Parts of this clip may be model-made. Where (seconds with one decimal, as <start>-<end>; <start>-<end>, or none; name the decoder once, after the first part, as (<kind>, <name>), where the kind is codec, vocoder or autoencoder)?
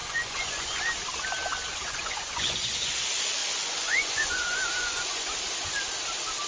0.0-0.8 (vocoder, Vocos); 1.8-2.9; 3.4-5.4